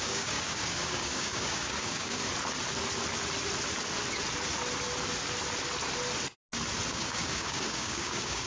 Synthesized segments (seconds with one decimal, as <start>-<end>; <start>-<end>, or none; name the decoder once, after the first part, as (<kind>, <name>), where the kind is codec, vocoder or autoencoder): 0.0-2.2 (codec, DAC); 6.9-8.5